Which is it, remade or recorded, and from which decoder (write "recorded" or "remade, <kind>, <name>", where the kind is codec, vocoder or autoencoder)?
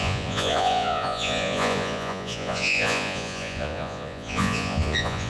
remade, vocoder, Vocos